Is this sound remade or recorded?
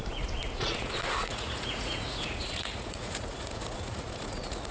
remade